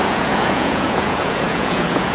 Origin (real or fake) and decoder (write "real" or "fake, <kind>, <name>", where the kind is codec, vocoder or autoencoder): fake, vocoder, Vocos